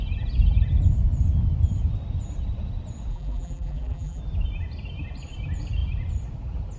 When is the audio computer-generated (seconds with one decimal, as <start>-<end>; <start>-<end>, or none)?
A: 3.1-4.2